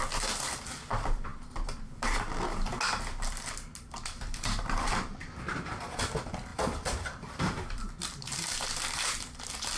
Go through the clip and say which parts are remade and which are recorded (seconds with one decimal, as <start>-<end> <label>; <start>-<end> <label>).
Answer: 0.0-6.5 recorded; 6.5-7.8 remade; 7.8-9.8 recorded